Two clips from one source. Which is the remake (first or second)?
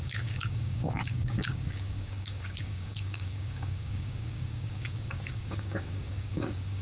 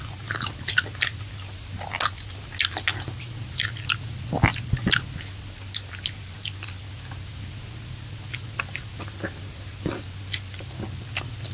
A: first